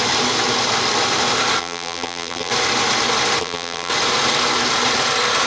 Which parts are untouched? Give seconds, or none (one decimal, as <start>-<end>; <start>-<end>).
0.0-1.6; 2.5-3.4; 3.9-5.5